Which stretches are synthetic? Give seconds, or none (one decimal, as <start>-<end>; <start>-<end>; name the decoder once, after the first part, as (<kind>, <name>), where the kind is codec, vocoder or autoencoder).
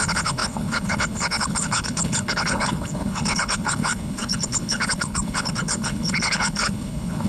0.0-7.3 (codec, HILCodec)